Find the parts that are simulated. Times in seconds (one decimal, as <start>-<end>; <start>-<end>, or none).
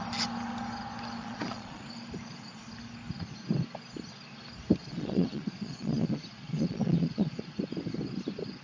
1.2-1.8; 4.8-7.6